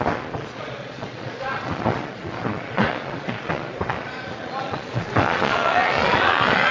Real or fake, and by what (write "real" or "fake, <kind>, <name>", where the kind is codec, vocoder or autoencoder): fake, vocoder, Vocos